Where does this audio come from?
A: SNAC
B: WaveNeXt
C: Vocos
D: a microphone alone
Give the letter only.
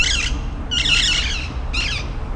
D